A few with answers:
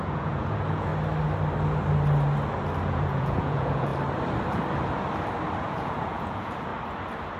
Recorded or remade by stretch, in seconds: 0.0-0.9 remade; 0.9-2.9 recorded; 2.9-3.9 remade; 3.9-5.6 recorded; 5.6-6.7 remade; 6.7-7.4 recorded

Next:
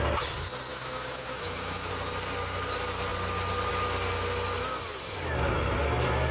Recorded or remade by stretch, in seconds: 0.0-0.7 recorded; 0.7-1.9 remade; 1.9-6.3 recorded

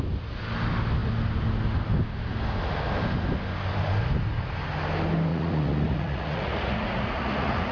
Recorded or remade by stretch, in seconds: 0.0-5.3 recorded; 5.3-7.7 remade

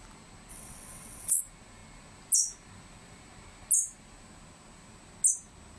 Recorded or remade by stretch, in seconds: 0.0-0.5 recorded; 0.5-1.4 remade; 1.4-5.8 recorded

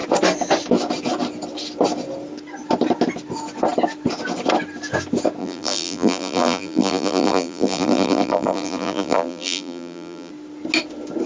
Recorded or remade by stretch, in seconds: 0.0-5.4 recorded; 5.4-10.3 remade; 10.3-11.3 recorded

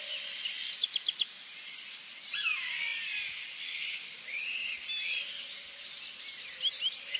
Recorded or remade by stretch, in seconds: 0.0-7.2 recorded